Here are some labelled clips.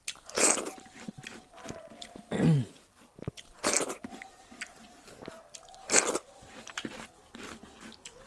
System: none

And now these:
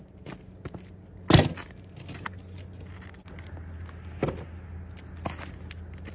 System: none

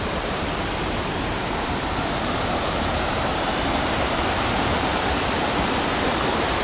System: vocoder, BigVGAN v2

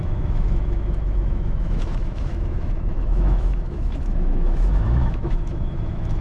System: autoencoder, DAC-VAE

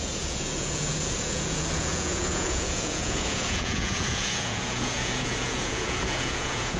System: vocoder, Vocos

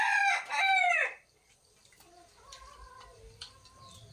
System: vocoder, BigVGAN v2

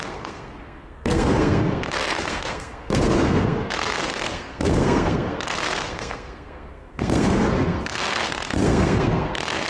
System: codec, SNAC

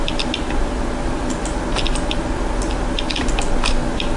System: none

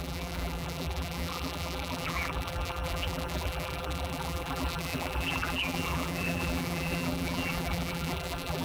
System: vocoder, BigVGAN v2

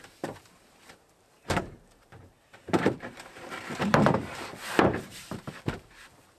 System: vocoder, BigVGAN v2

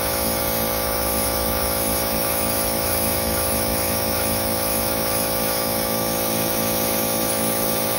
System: autoencoder, DAC-VAE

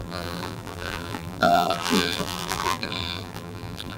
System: vocoder, BigVGAN v2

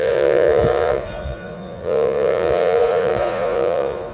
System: vocoder, Vocos